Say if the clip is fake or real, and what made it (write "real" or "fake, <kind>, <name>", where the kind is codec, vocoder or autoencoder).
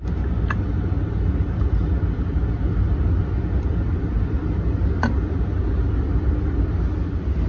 real